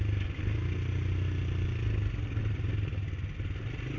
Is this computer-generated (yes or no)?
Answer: no